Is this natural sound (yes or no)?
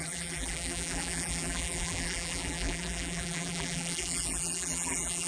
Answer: no